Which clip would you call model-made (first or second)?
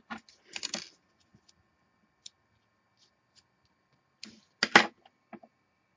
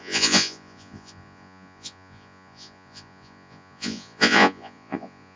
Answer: second